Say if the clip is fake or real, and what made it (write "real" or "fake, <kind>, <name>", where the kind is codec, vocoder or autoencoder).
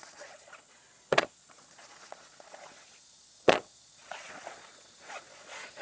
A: fake, vocoder, Vocos